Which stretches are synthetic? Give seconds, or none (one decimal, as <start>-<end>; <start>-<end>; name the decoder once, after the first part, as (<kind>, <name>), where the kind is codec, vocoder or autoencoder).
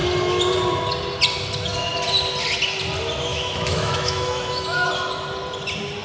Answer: 3.3-4.9 (autoencoder, DAC-VAE)